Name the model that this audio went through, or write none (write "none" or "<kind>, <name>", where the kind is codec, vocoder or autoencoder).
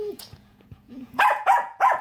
vocoder, Vocos